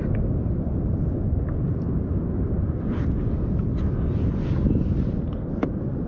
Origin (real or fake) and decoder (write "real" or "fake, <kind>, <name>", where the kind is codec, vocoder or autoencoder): real